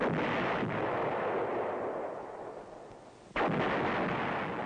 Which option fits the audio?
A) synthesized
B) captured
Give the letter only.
B